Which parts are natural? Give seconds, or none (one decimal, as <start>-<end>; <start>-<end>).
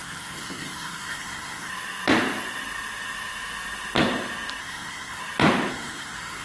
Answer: 1.7-4.6; 5.2-5.7